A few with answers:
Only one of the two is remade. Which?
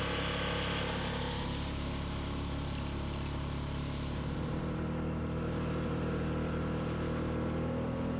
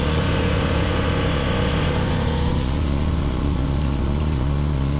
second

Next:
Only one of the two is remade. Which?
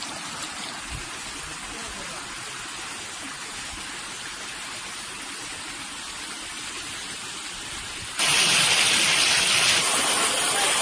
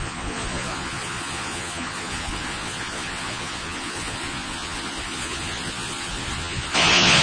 second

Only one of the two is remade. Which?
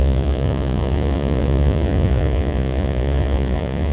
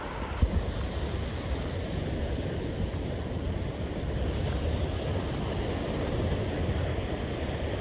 first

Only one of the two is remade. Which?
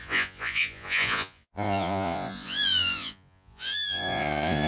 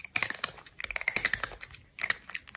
first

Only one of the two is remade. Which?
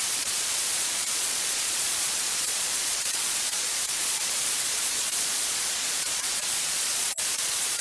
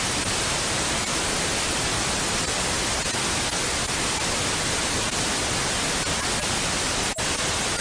first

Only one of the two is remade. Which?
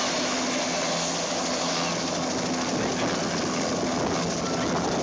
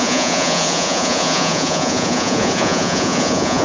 second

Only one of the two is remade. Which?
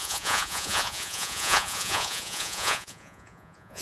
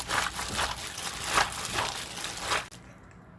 first